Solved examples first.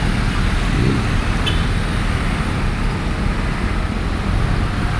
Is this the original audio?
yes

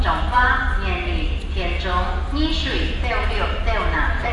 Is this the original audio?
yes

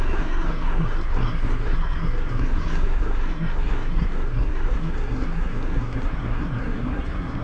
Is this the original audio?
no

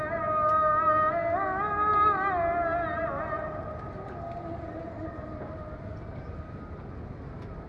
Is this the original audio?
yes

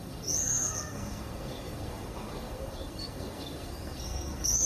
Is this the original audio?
no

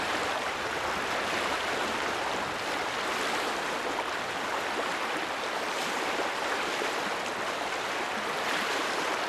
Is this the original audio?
yes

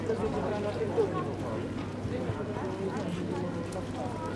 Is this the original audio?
yes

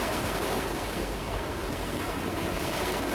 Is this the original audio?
no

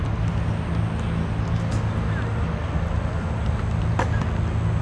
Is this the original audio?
yes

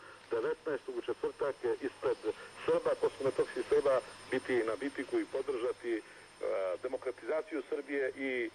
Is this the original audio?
yes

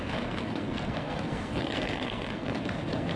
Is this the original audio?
no